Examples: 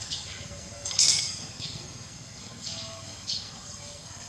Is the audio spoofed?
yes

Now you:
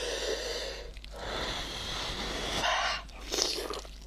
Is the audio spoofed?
no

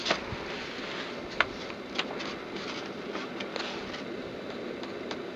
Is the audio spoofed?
no